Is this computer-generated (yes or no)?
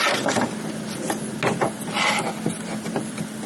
no